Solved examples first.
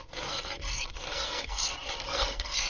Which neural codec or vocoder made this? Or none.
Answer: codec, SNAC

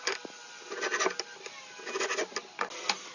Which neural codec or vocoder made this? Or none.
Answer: none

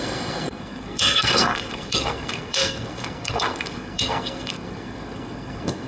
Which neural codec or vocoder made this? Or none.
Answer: codec, SNAC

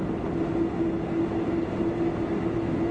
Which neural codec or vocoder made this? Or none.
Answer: none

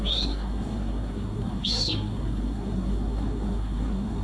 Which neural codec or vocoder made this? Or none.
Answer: codec, SNAC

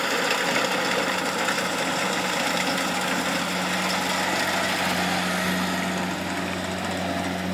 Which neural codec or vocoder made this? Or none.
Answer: none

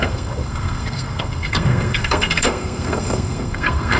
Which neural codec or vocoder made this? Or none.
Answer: codec, SNAC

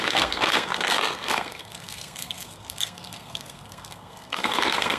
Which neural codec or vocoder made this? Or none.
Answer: codec, SNAC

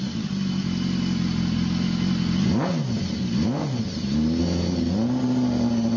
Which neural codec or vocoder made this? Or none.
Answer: none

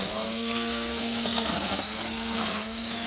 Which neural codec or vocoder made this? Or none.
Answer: codec, SNAC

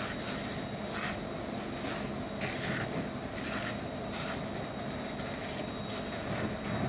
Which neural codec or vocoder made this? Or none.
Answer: none